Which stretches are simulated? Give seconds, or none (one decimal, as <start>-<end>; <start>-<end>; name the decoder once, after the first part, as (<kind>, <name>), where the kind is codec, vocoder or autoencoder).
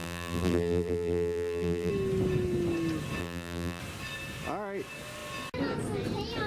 0.0-1.9 (vocoder, BigVGAN v2); 3.2-3.8